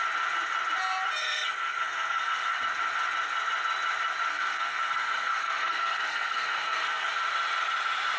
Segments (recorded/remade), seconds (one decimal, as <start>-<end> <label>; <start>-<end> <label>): 0.0-1.2 recorded; 1.2-2.6 remade; 2.6-4.3 recorded; 4.3-7.1 remade; 7.1-8.2 recorded